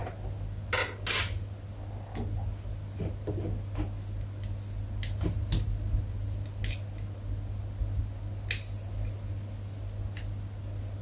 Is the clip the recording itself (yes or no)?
yes